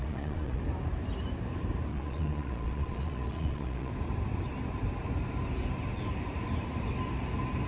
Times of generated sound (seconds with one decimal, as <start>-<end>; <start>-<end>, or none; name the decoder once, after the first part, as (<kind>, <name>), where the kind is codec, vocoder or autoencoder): 0.0-0.6 (vocoder, Vocos); 1.9-3.9